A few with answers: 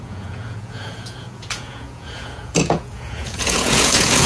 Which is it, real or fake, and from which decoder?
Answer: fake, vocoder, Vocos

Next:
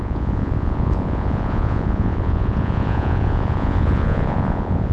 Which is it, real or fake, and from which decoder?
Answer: fake, vocoder, Vocos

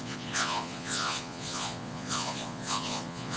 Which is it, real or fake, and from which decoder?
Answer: fake, vocoder, Vocos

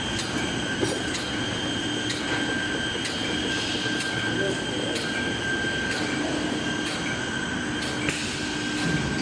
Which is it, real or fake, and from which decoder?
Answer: real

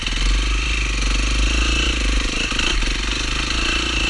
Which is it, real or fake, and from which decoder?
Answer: real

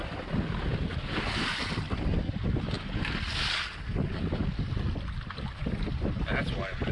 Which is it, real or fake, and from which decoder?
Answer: real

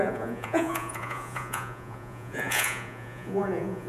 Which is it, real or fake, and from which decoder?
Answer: fake, vocoder, Vocos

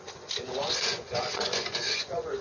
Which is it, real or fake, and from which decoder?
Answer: fake, vocoder, Vocos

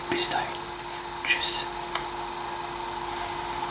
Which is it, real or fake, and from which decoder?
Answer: real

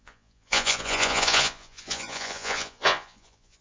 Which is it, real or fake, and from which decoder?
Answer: fake, vocoder, Vocos